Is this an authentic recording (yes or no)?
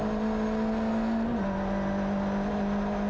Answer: yes